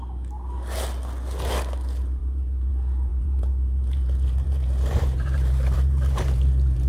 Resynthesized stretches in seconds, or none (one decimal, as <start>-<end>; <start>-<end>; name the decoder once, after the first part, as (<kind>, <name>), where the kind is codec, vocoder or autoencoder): 2.2-2.7 (vocoder, BigVGAN v2); 3.1-6.9